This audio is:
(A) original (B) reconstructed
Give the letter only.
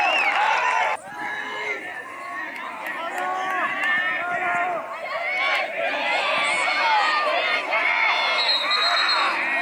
A